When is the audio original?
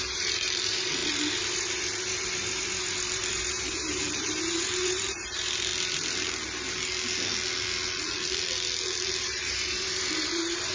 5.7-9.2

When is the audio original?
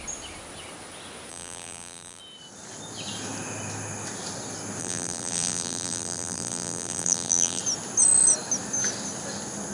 0.0-1.3; 2.2-4.8; 7.6-9.7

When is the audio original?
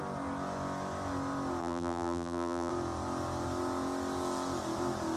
0.0-1.6; 2.7-5.2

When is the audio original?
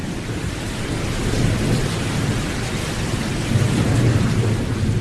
0.0-5.0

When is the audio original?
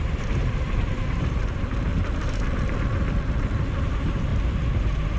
1.9-3.8; 4.3-4.8